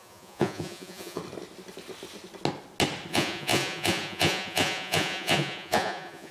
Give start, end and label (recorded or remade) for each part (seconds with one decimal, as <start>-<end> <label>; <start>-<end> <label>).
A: 0.0-1.2 remade; 1.2-3.1 recorded; 3.1-6.3 remade